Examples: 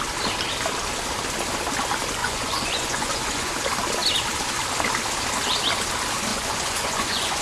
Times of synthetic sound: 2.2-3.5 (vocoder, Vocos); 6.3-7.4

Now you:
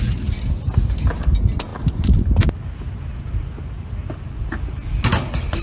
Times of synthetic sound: none